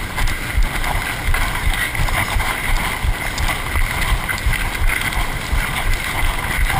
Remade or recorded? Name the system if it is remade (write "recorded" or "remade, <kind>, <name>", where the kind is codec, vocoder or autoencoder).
recorded